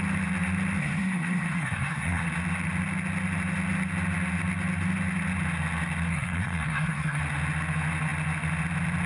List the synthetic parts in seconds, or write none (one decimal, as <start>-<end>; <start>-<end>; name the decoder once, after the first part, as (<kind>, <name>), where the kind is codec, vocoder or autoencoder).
0.8-2.2 (codec, SNAC); 6.1-7.2